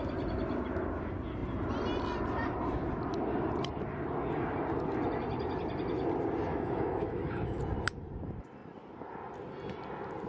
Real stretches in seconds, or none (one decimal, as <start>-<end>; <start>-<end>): 0.0-6.5; 7.6-10.3